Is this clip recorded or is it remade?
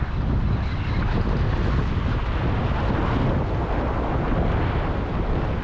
recorded